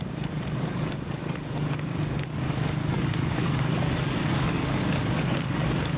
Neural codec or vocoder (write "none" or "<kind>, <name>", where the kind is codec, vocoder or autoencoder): codec, DAC